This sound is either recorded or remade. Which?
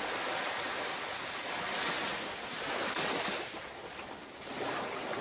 recorded